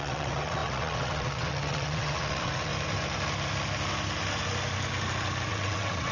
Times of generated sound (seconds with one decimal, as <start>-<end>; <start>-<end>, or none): 0.0-2.7; 5.5-6.1